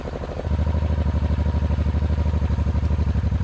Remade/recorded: recorded